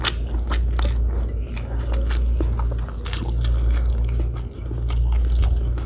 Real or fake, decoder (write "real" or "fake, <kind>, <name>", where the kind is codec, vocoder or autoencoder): real